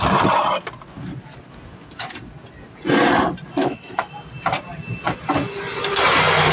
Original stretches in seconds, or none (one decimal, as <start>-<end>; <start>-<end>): 0.0-3.6; 4.1-6.5